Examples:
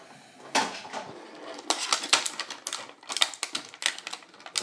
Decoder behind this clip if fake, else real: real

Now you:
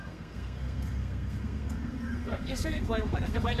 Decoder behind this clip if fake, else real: fake, codec, SNAC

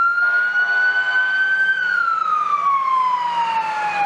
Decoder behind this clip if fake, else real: real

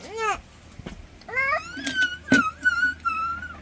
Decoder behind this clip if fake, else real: real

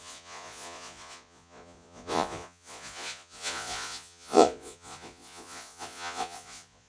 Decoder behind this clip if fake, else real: fake, vocoder, Vocos